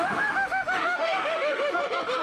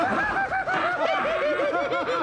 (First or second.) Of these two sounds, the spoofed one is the first